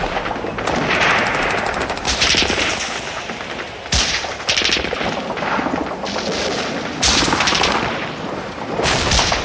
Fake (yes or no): no